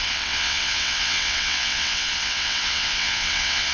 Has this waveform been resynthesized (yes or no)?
yes